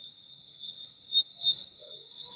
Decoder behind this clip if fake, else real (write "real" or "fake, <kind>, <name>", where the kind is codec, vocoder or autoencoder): fake, codec, DAC